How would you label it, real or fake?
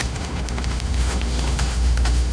fake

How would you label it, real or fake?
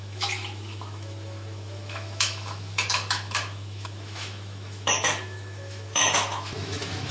fake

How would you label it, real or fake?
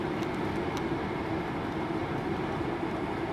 real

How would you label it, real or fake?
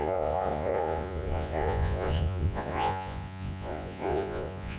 fake